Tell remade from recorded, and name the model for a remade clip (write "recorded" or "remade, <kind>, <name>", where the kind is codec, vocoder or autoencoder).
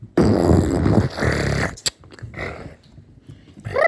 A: recorded